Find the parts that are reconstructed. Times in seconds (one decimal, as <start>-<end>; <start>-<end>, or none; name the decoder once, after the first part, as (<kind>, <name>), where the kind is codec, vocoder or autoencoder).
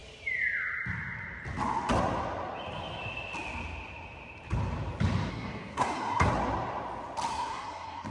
5.3-6.3 (codec, SNAC); 7.3-8.1